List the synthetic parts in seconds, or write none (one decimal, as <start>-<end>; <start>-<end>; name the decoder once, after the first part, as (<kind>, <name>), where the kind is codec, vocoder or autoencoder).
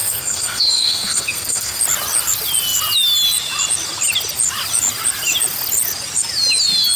0.0-1.8 (codec, SNAC)